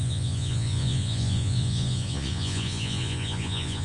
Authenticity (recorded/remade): remade